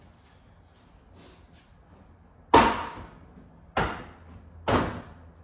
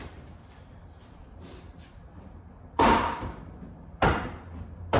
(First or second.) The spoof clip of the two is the second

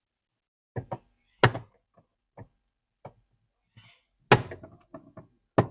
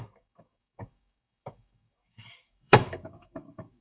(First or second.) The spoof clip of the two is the second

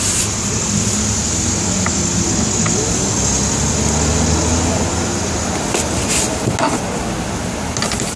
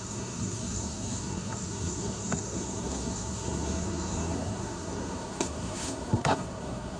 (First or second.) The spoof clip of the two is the second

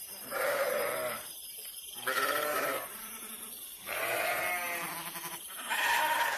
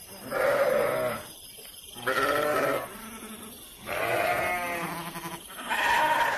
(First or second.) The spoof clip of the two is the first